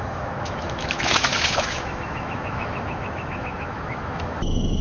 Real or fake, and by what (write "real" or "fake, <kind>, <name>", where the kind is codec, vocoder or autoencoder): fake, autoencoder, DAC-VAE